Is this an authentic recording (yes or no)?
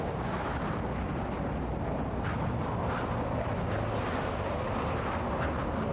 yes